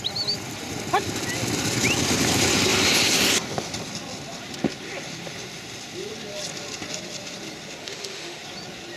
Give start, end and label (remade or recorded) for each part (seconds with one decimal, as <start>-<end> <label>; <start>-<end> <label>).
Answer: 0.0-7.8 recorded; 7.8-8.4 remade; 8.4-9.0 recorded